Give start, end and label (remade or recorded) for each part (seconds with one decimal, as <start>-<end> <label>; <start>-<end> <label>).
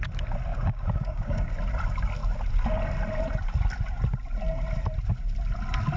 0.0-0.5 recorded; 0.5-1.5 remade; 1.5-6.0 recorded